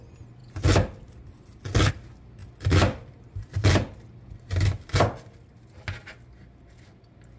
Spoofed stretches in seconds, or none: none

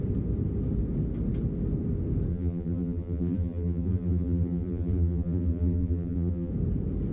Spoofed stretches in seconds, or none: 2.3-6.5

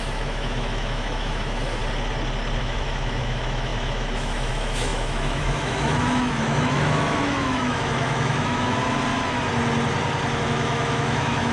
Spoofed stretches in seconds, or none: 0.0-1.8; 2.6-8.8; 10.4-11.5

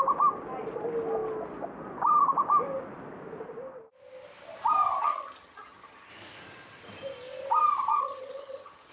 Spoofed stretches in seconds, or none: 5.0-6.1; 7.9-8.9

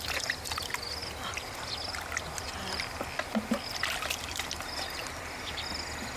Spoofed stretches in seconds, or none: none

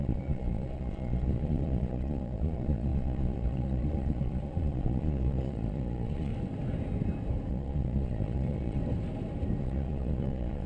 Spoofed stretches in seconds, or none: 0.0-6.3; 7.5-8.8; 9.6-10.7

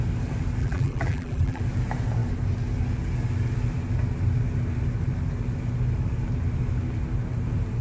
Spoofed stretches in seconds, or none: 0.6-1.6

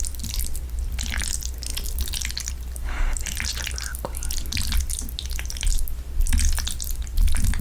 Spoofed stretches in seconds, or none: none